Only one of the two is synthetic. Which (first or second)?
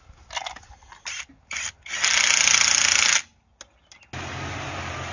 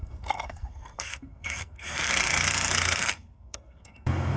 second